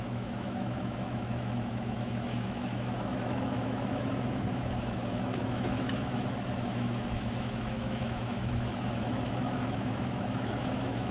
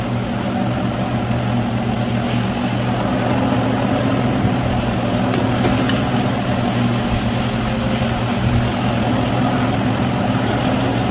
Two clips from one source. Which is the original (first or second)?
second